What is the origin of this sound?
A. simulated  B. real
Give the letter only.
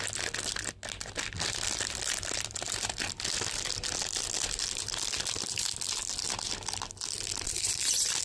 B